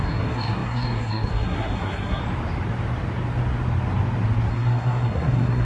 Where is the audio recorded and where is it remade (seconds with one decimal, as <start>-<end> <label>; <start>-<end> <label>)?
0.0-2.2 remade; 2.2-4.5 recorded; 4.5-5.6 remade